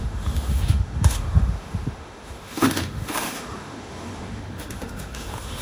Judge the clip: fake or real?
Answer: fake